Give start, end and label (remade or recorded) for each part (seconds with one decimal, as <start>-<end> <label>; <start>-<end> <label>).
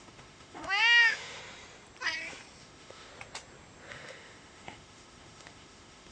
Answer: 0.0-1.4 remade; 1.4-2.6 recorded; 2.6-3.1 remade; 3.1-3.9 recorded; 3.9-6.1 remade